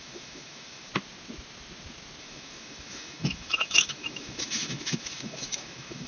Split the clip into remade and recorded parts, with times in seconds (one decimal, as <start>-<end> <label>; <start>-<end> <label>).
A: 0.0-0.9 remade; 0.9-2.2 recorded; 2.2-6.1 remade